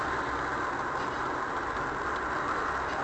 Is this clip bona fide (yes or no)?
yes